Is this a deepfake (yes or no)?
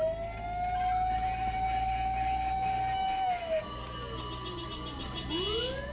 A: no